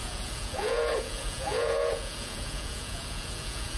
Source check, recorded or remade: remade